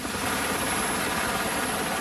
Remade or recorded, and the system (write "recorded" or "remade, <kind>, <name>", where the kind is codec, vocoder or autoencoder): recorded